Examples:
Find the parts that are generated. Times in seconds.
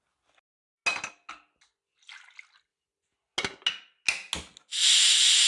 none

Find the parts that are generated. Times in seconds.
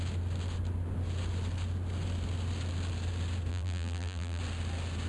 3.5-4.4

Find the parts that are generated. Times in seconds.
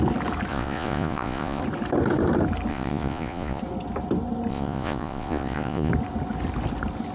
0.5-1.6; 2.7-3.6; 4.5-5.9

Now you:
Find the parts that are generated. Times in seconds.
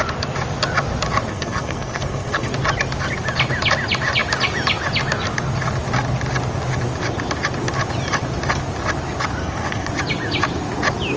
1.3-2.5; 9.4-9.9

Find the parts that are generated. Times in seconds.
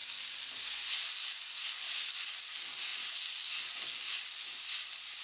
none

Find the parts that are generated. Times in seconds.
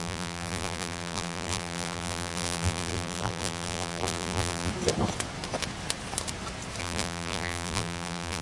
0.0-4.7; 6.8-8.4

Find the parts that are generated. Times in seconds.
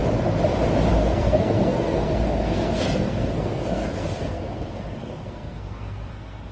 0.9-6.5